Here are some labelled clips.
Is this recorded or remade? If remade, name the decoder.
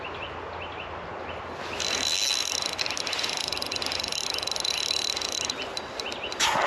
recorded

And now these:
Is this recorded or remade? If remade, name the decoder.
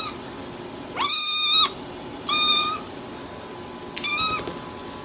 recorded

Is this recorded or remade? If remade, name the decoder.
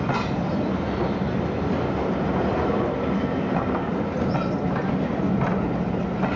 recorded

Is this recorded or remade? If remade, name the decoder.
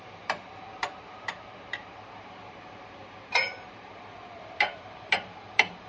remade, vocoder, BigVGAN v2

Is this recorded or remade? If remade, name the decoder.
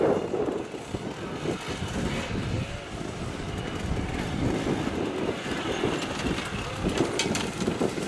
recorded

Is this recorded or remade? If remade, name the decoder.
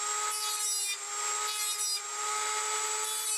recorded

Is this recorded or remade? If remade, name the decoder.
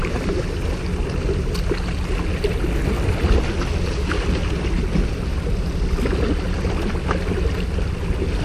recorded